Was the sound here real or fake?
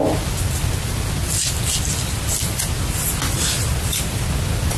real